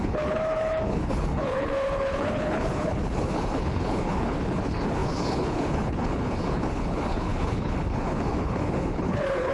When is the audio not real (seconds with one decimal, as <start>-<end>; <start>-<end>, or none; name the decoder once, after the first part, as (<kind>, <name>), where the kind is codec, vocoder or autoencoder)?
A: 0.0-9.5 (codec, HILCodec)